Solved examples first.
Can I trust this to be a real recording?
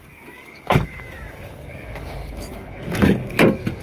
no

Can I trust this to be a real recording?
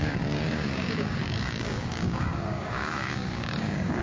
no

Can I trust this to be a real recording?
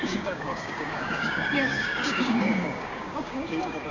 no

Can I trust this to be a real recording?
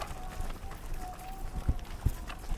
yes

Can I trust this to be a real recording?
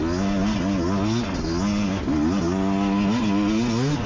yes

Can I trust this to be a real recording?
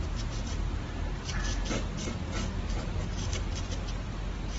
yes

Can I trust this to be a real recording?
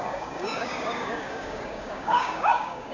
no